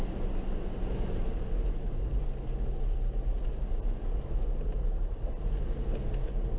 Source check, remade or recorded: recorded